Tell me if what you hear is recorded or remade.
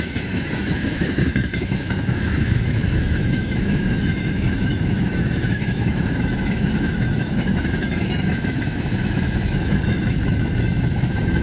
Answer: remade